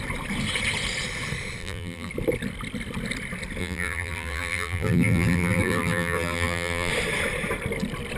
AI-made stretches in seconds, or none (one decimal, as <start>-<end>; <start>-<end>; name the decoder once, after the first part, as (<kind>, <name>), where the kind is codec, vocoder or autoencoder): 1.6-2.1 (vocoder, BigVGAN v2); 3.6-6.9